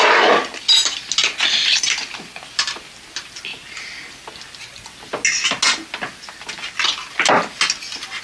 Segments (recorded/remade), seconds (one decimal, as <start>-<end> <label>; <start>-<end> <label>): 0.0-8.2 recorded